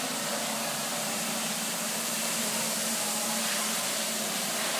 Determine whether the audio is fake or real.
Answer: fake